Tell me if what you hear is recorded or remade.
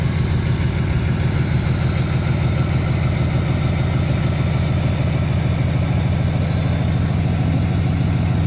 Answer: recorded